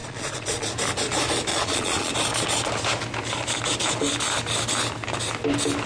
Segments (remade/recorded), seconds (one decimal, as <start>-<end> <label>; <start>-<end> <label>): 0.0-0.7 remade; 0.7-1.5 recorded; 1.5-2.1 remade; 2.1-5.9 recorded